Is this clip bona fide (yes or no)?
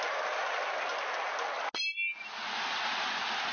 yes